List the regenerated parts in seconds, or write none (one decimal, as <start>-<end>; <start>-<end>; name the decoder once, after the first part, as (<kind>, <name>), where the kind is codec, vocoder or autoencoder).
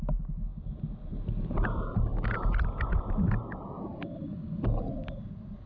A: none